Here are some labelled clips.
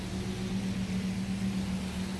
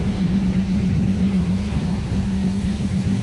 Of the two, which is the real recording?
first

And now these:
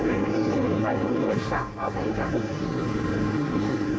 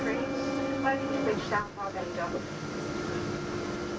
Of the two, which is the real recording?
second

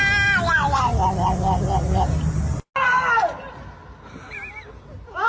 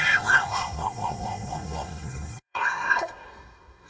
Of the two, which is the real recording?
first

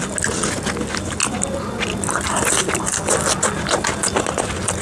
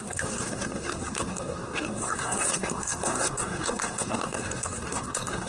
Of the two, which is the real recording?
first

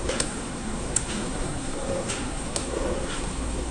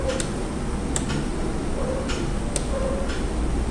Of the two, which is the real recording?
second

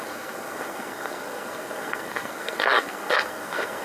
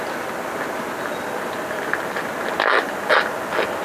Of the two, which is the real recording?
second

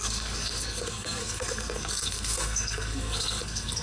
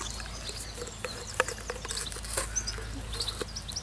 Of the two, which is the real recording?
second